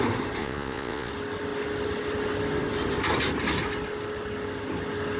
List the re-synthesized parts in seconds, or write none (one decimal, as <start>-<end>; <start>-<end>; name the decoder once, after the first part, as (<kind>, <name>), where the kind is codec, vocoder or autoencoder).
0.4-1.1 (vocoder, Vocos)